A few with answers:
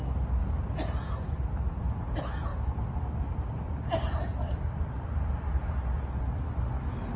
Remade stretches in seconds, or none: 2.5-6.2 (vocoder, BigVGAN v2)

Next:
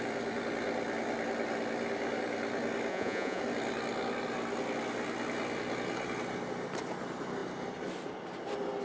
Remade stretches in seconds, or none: 2.9-3.4 (vocoder, Vocos)

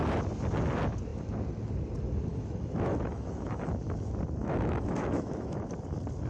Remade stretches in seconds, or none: 2.3-3.7 (autoencoder, DAC-VAE); 4.4-5.7

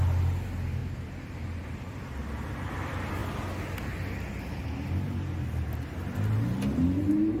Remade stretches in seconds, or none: none

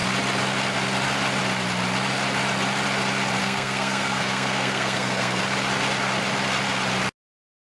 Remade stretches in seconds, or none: 3.4-5.4 (codec, SNAC)